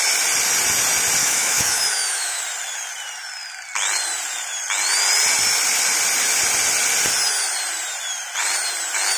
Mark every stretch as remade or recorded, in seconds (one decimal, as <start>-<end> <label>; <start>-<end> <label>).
0.0-1.2 recorded; 1.2-2.4 remade; 2.4-9.2 recorded